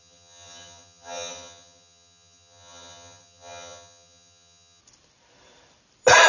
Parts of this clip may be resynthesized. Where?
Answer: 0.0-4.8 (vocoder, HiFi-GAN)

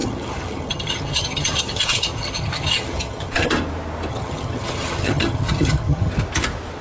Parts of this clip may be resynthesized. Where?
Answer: 0.0-3.5 (vocoder, HiFi-GAN); 4.1-6.1

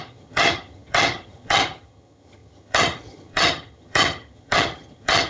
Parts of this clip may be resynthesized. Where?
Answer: 0.0-5.3 (vocoder, HiFi-GAN)

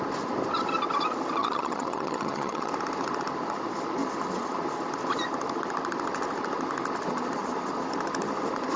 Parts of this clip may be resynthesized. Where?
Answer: 1.4-2.7 (vocoder, HiFi-GAN)

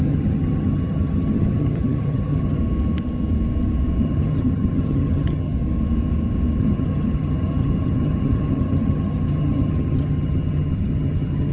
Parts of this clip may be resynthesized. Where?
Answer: 0.0-2.6 (vocoder, HiFi-GAN); 4.0-5.6; 6.6-11.5